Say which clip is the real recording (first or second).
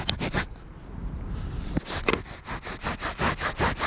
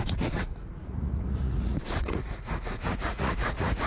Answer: first